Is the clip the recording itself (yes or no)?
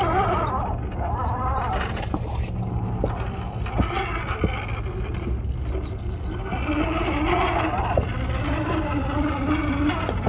yes